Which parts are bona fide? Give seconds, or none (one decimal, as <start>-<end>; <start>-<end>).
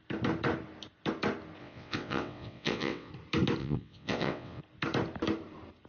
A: 0.0-1.6; 3.1-3.6; 4.6-5.9